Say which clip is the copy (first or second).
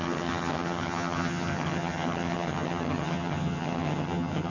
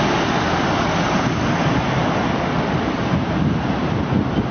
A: first